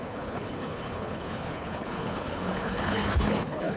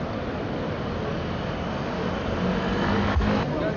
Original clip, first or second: second